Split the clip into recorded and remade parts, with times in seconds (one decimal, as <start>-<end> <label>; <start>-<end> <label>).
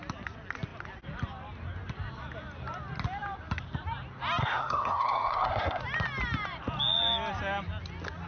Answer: 0.0-4.4 recorded; 4.4-5.8 remade; 5.8-8.3 recorded